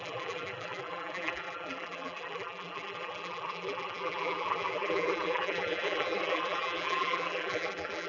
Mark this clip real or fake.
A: fake